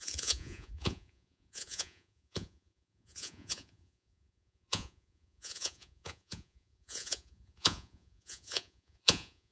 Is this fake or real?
fake